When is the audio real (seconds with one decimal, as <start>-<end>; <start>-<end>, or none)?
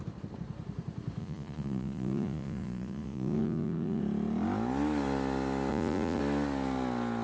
0.0-1.2; 4.0-5.7; 6.2-7.2